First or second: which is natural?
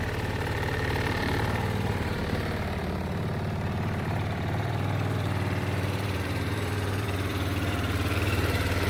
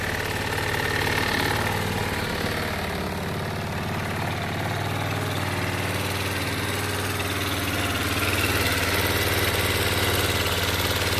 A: second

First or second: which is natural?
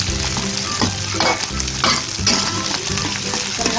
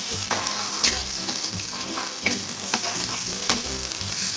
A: first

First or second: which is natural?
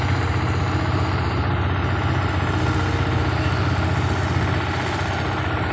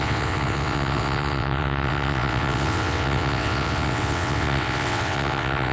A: first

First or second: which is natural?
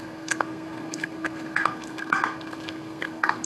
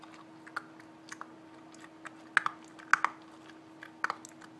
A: second